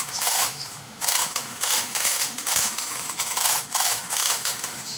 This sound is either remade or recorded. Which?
remade